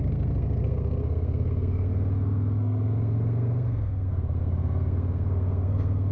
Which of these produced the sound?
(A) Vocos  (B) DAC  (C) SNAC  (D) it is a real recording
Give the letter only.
C